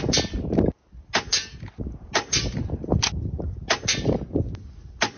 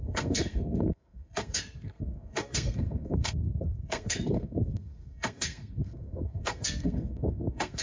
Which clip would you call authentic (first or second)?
first